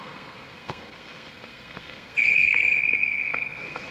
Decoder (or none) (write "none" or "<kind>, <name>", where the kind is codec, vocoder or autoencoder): codec, SNAC